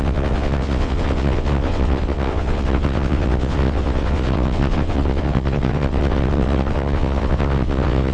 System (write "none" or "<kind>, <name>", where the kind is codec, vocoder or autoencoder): vocoder, WaveNeXt